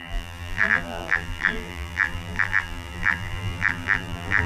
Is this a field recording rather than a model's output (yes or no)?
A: no